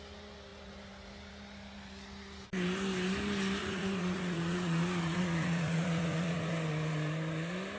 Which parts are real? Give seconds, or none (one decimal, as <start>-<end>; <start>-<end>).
0.0-3.6; 6.5-7.8